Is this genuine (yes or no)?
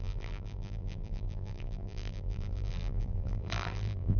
no